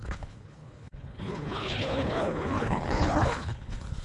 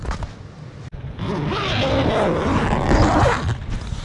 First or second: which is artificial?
first